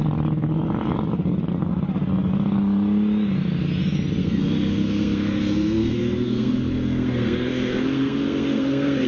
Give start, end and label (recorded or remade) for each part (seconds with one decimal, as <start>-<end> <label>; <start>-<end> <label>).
0.0-4.2 recorded; 4.2-9.1 remade